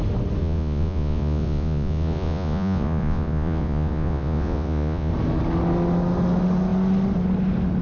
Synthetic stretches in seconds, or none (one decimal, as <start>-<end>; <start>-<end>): 0.4-5.1